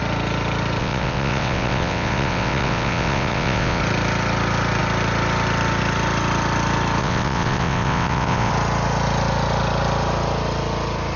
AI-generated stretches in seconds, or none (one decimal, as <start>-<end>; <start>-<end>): 0.8-3.8; 7.0-8.5